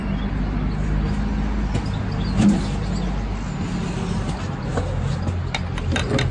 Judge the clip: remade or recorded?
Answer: recorded